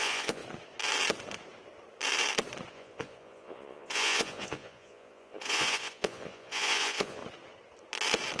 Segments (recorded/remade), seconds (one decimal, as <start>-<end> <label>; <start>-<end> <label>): 0.0-0.4 remade; 0.4-2.7 recorded; 2.7-7.2 remade; 7.2-8.4 recorded